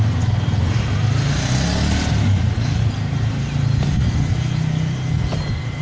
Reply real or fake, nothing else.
real